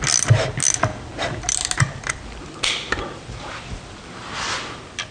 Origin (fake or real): real